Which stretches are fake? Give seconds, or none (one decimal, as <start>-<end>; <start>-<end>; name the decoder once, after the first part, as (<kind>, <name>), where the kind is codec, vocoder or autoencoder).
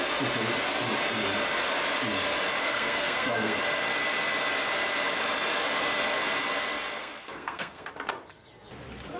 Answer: 2.6-3.6 (codec, SNAC); 7.0-7.9